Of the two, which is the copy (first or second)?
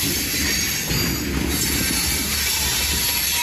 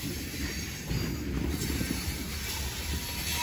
second